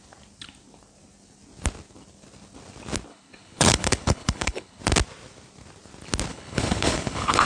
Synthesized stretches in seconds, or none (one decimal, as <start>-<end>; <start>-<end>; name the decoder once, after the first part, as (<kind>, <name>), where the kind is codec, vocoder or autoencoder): 3.1-4.8 (codec, HILCodec); 6.3-7.5